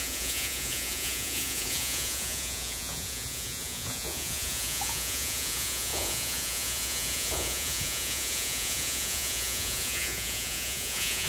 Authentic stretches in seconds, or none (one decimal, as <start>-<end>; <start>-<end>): none